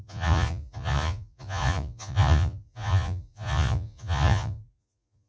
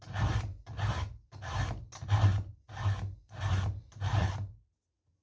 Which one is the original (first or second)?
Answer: second